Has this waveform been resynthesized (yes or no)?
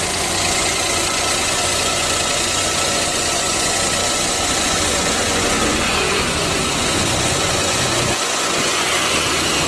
yes